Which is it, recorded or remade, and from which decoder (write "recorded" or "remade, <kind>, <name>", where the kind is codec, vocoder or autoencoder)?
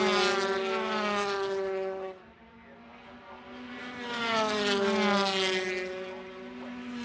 recorded